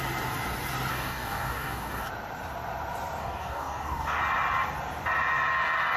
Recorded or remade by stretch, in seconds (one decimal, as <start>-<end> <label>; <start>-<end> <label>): 0.0-0.9 recorded; 0.9-2.1 remade; 2.1-3.2 recorded; 3.2-4.2 remade; 4.2-6.0 recorded

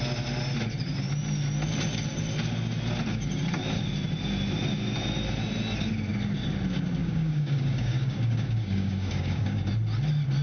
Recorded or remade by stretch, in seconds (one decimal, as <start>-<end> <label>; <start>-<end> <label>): 0.0-7.0 recorded; 7.0-9.6 remade; 9.6-10.4 recorded

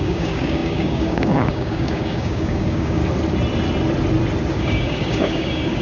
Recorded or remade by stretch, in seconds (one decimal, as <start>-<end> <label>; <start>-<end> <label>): 0.0-3.0 remade; 3.0-4.5 recorded; 4.5-5.8 remade

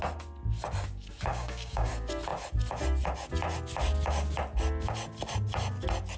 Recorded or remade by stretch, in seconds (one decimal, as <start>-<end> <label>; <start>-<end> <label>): 0.0-1.3 recorded; 1.3-1.9 remade; 1.9-6.2 recorded

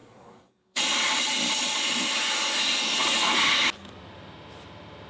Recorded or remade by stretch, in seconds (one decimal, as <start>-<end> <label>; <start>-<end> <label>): 0.0-0.8 remade; 0.8-5.1 recorded

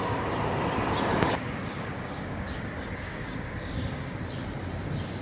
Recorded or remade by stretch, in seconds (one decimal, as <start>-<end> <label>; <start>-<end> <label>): 0.0-1.1 recorded; 1.1-4.2 remade; 4.2-5.2 recorded

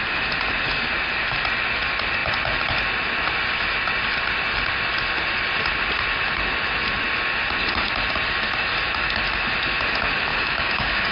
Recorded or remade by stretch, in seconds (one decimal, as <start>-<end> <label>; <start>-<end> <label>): 0.0-10.3 recorded; 10.3-11.1 remade

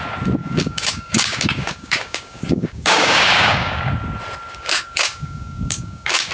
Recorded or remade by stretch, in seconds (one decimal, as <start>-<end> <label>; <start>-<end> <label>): 0.0-0.4 recorded; 0.4-3.8 remade; 3.8-4.5 recorded; 4.5-6.3 remade